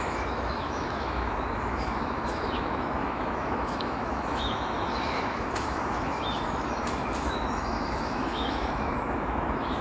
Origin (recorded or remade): remade